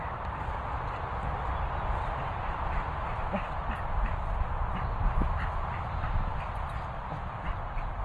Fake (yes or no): no